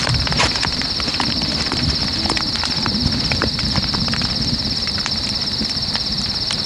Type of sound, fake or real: fake